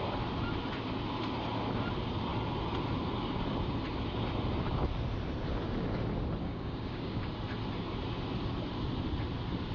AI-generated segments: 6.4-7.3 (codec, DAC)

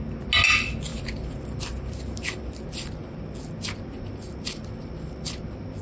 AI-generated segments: none

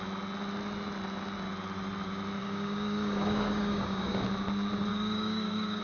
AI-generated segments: 2.4-4.2 (codec, DAC); 4.9-5.8